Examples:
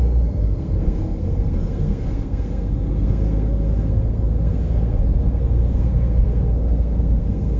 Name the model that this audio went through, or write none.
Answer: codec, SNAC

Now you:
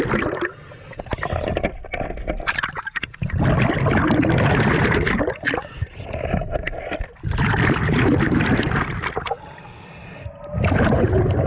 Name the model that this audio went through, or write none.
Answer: none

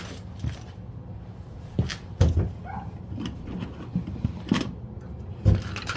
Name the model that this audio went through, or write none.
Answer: none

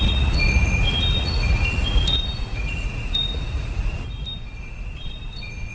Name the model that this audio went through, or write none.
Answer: vocoder, Vocos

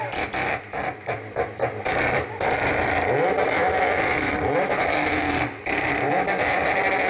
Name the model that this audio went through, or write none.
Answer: vocoder, BigVGAN v2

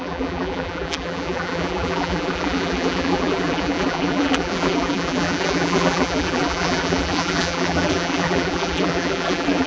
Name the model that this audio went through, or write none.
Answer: vocoder, BigVGAN v2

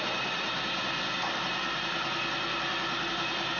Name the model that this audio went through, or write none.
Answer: none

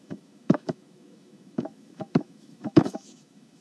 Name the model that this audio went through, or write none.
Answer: autoencoder, DAC-VAE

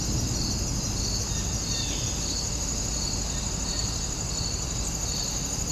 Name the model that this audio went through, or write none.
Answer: none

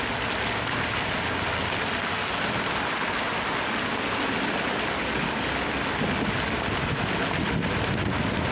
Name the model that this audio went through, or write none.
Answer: none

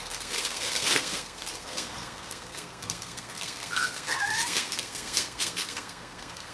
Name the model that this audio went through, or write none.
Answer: codec, SNAC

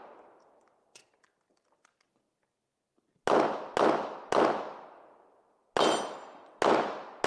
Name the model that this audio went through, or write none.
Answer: none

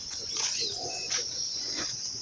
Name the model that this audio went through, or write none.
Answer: vocoder, Vocos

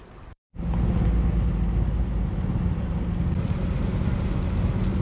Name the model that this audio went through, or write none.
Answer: none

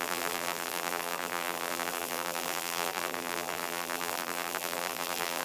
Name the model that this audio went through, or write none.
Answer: vocoder, BigVGAN v2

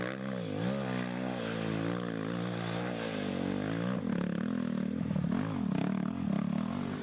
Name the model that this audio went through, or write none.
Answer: none